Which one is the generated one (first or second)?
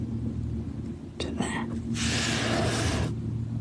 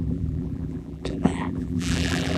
second